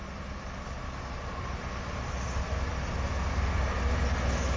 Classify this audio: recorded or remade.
recorded